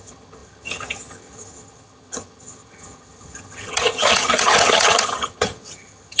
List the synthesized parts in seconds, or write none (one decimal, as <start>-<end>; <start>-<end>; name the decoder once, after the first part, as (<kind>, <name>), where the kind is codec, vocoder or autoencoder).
0.0-6.2 (vocoder, HiFi-GAN)